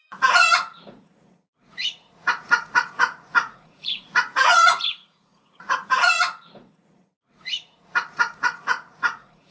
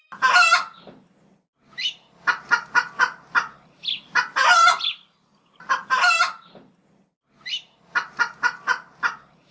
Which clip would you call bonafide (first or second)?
second